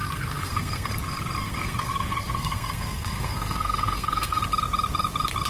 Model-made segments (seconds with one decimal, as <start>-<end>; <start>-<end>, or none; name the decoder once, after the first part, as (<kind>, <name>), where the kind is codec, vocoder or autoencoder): 0.0-0.9 (codec, SNAC); 1.4-4.4